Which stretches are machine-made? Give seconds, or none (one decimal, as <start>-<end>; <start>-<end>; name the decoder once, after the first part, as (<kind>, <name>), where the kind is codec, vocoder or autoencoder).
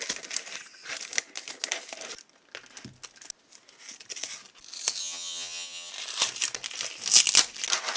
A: 5.0-5.9 (vocoder, HiFi-GAN)